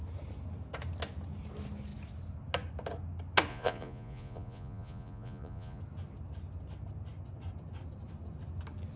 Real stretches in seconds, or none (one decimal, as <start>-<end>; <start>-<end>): 0.0-3.5; 5.8-9.0